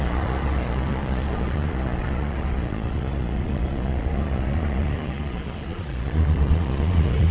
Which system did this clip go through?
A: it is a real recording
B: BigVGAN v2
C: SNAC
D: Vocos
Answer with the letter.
D